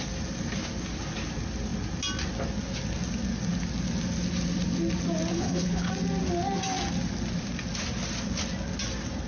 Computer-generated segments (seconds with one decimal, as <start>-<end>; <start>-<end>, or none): 5.3-5.9